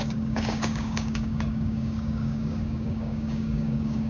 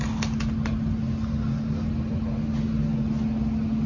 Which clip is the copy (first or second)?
first